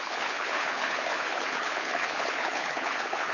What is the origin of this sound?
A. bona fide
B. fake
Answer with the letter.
B